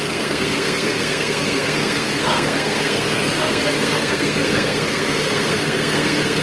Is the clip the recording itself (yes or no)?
no